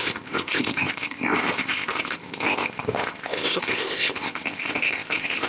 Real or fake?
fake